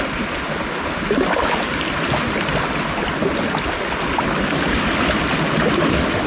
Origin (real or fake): real